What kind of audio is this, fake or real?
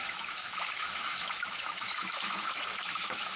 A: fake